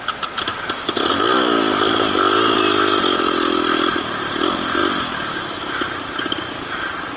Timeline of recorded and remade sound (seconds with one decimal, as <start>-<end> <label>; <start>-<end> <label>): 0.0-7.2 recorded